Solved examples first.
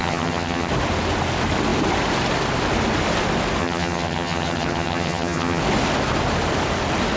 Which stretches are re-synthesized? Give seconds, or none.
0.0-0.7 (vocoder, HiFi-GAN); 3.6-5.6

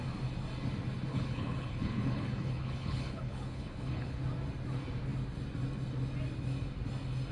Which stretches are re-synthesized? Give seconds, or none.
1.1-4.2 (codec, HILCodec)

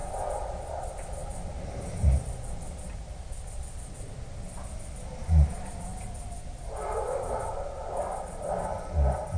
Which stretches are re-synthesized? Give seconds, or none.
none

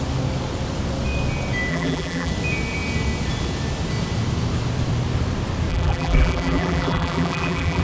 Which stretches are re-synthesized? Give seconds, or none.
1.7-2.3 (vocoder, BigVGAN v2); 5.7-7.8

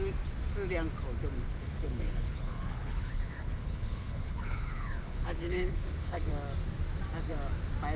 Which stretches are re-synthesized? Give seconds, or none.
1.5-6.3 (codec, HILCodec)